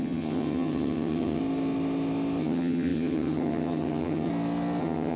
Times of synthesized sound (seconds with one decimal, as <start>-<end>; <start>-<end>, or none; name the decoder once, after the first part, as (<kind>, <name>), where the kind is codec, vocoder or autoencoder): 0.0-1.4 (vocoder, HiFi-GAN); 2.4-4.3; 4.8-5.2

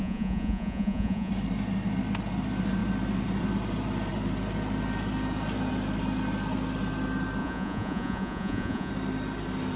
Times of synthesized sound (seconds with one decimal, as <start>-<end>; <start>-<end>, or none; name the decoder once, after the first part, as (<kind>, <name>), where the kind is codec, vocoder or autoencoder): 0.0-1.3 (vocoder, Vocos); 7.4-8.9

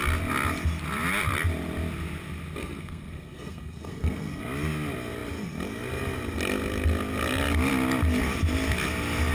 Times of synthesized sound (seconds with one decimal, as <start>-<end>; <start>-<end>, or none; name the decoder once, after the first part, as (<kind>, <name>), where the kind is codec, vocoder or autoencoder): 2.6-4.4 (codec, SNAC)

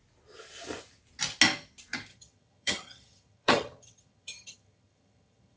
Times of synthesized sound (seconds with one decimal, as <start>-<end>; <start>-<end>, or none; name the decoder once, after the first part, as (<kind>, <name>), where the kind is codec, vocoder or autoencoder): 2.1-5.6 (vocoder, HiFi-GAN)

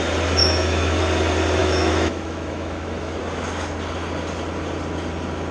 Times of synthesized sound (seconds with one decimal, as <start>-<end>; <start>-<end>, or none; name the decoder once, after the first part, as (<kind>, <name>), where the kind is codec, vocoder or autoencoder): 0.4-1.0 (autoencoder, DAC-VAE); 1.6-3.2

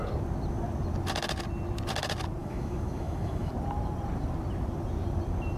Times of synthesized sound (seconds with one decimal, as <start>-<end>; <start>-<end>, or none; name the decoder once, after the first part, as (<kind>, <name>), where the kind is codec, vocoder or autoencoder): 2.4-3.5 (autoencoder, DAC-VAE)